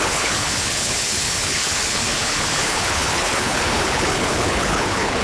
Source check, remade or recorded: remade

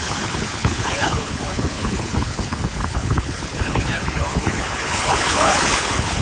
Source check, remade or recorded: remade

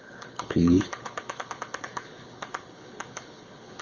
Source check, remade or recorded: remade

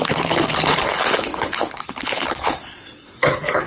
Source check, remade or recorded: remade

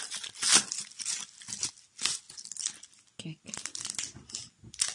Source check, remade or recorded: recorded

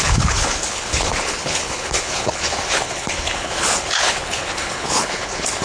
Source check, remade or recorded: remade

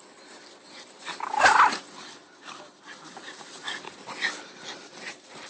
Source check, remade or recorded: recorded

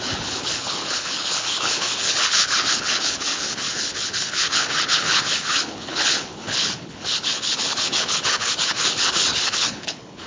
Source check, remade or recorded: remade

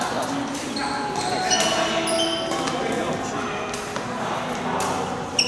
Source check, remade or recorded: recorded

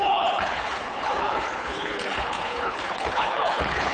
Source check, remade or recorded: remade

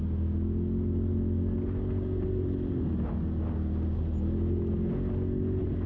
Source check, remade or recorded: recorded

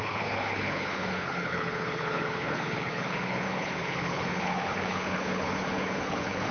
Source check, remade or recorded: remade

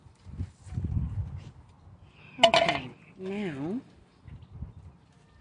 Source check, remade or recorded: recorded